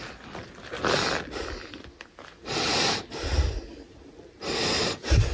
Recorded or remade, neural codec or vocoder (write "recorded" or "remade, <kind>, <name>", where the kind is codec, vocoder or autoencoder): recorded